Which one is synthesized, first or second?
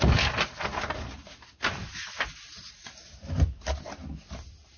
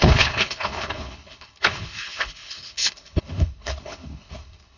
second